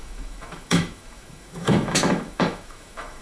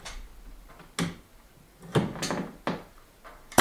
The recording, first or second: second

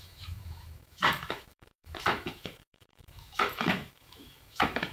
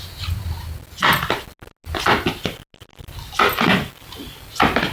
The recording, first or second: second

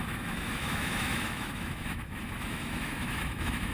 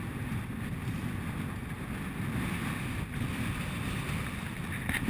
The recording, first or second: second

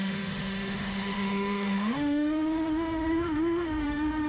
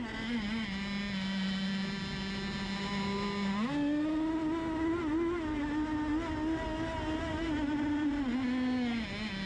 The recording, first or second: second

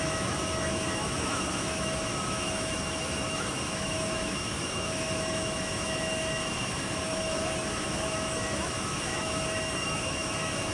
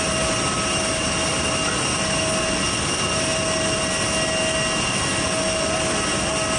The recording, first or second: second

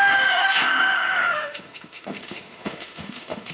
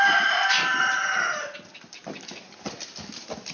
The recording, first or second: second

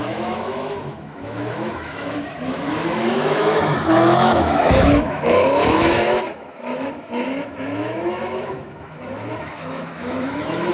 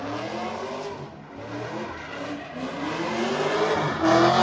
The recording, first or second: second